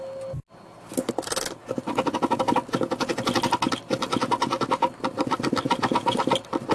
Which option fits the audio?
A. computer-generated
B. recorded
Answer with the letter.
B